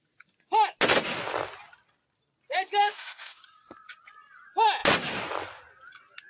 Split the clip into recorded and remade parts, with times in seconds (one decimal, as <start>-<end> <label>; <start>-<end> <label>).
0.0-2.8 recorded; 2.8-3.4 remade; 3.4-6.3 recorded